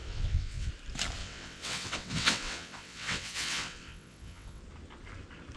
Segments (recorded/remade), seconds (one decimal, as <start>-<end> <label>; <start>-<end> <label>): 0.0-0.7 remade; 0.7-1.2 recorded; 1.2-4.6 remade; 4.6-5.6 recorded